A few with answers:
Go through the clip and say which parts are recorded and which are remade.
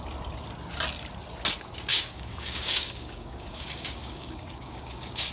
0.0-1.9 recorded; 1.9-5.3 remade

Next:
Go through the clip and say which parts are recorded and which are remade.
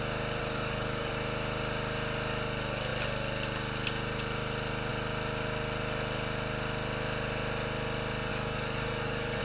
0.0-0.4 recorded; 0.4-1.1 remade; 1.1-8.3 recorded; 8.3-9.4 remade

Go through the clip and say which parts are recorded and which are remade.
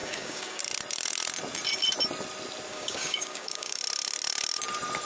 0.0-0.6 remade; 0.6-2.7 recorded; 2.7-3.8 remade; 3.8-5.1 recorded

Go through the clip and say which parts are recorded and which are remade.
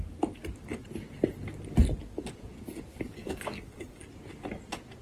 0.0-2.9 recorded; 2.9-4.0 remade; 4.0-5.0 recorded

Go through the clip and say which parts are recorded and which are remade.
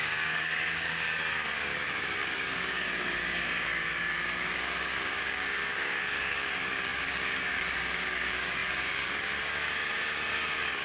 0.0-10.8 remade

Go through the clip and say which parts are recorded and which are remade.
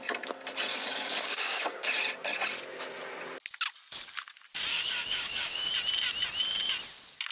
0.0-0.7 recorded; 0.7-1.9 remade; 1.9-4.7 recorded; 4.7-5.7 remade; 5.7-7.3 recorded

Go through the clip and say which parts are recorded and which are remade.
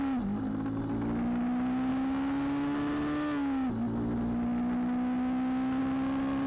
0.0-6.5 recorded